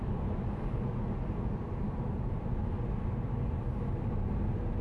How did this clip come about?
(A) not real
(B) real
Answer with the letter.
B